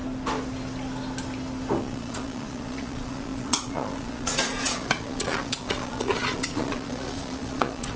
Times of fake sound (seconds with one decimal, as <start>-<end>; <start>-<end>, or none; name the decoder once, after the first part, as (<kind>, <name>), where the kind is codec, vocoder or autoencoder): 1.8-8.0 (vocoder, Vocos)